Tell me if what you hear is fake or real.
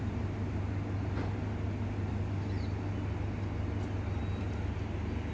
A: real